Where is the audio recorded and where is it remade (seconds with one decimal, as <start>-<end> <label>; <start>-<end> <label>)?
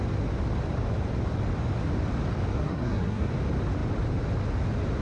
0.0-2.5 recorded; 2.5-3.3 remade; 3.3-5.0 recorded